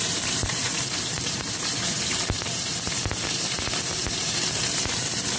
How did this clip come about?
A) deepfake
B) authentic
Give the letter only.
A